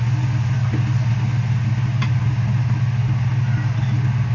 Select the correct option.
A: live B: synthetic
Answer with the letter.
A